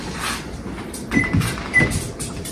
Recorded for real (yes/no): no